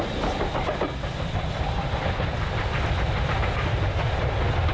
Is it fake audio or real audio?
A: real